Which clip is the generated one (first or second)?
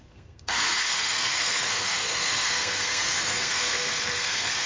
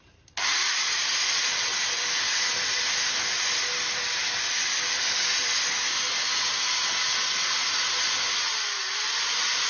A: first